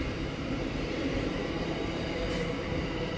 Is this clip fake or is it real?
fake